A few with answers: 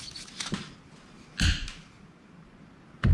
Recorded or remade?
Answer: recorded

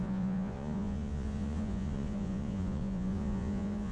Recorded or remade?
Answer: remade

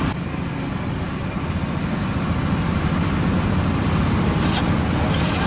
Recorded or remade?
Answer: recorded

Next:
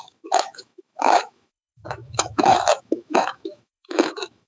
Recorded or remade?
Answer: remade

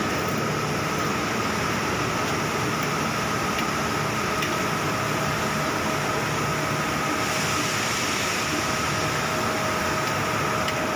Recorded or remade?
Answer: recorded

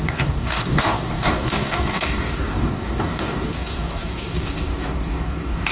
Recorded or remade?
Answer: remade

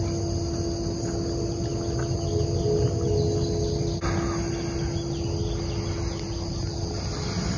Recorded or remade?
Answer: recorded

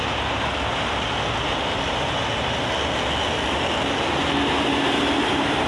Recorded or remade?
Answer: recorded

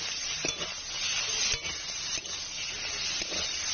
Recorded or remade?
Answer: recorded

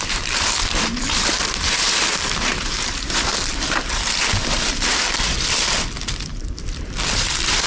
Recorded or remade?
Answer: remade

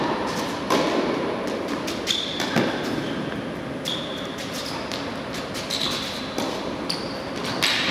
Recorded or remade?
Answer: recorded